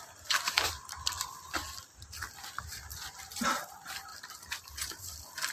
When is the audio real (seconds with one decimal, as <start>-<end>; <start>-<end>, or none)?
4.1-5.0

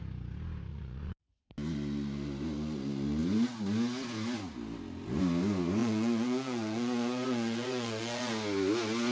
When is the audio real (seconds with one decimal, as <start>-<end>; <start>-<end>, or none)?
0.0-0.7; 1.4-5.8; 8.3-9.1

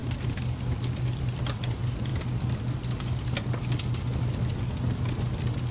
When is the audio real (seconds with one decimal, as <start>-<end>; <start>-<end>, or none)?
0.0-5.7

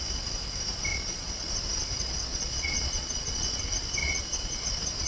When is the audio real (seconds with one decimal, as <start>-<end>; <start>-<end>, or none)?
0.0-0.9; 1.5-2.3; 3.6-4.0; 4.6-5.1

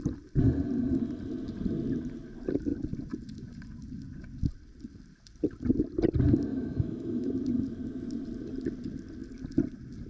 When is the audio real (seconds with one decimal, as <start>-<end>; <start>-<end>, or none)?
0.0-6.5; 7.3-10.1

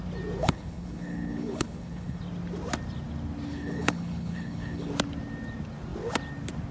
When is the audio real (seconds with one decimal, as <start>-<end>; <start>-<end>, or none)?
0.0-0.4; 2.2-3.5; 4.9-6.7

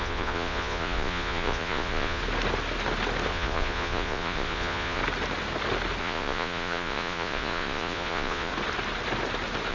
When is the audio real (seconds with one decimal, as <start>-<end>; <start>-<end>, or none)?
2.2-3.3; 5.0-6.0; 8.5-9.7

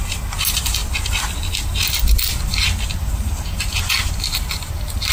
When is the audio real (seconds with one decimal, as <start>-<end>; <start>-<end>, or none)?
0.0-5.1